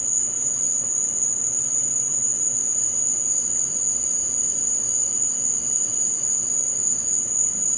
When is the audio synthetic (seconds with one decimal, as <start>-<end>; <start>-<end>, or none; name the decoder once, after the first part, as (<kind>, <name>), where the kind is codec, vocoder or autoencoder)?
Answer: none